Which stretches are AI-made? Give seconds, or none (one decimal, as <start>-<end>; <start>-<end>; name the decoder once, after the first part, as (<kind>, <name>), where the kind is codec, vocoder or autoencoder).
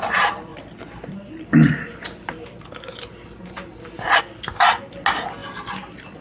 none